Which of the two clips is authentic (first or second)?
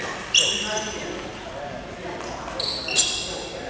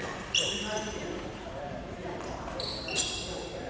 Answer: first